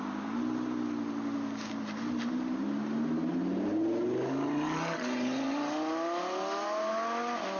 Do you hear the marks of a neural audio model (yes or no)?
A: no